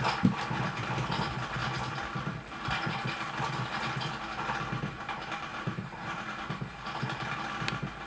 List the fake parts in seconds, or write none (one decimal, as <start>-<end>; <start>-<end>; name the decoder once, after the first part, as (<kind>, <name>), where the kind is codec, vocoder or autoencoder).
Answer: 5.5-6.4 (vocoder, Vocos)